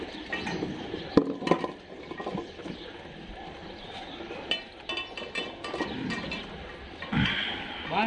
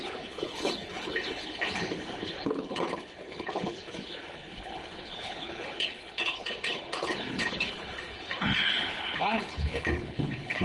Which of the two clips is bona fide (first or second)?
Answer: first